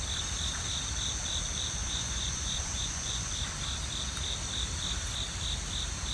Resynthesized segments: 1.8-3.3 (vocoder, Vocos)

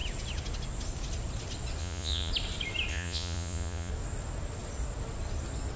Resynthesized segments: 1.8-2.3 (vocoder, Vocos); 2.9-3.9